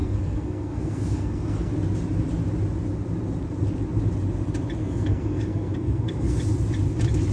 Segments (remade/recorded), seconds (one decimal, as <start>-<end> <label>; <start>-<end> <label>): 0.0-1.7 remade; 1.7-4.8 recorded; 4.8-6.4 remade; 6.4-7.3 recorded